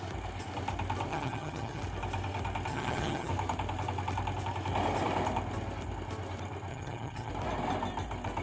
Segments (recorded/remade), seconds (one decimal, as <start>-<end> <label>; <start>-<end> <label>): 0.0-1.1 recorded; 1.1-1.8 remade; 1.8-2.7 recorded; 2.7-3.3 remade; 3.3-6.7 recorded; 6.7-7.3 remade; 7.3-8.4 recorded